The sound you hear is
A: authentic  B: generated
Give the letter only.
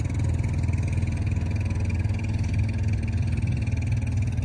A